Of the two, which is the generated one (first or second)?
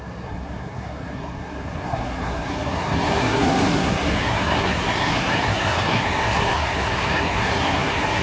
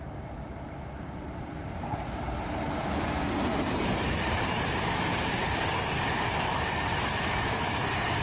first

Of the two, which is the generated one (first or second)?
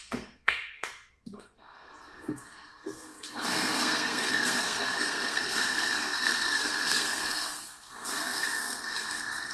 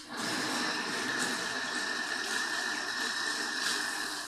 first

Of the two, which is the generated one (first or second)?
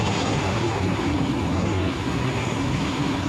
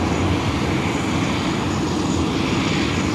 first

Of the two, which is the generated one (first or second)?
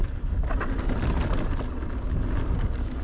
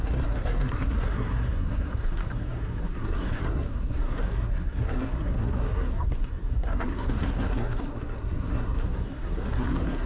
second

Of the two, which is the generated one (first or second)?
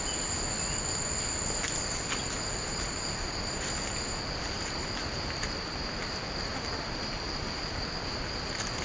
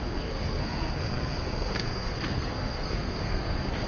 second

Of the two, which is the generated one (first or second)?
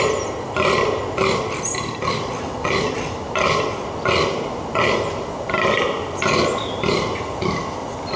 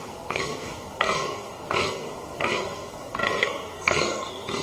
second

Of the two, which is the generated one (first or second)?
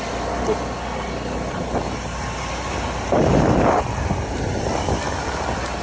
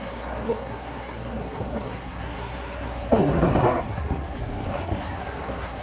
second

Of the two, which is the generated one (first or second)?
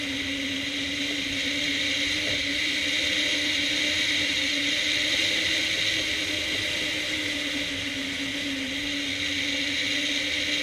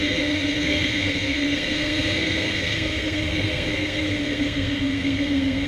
second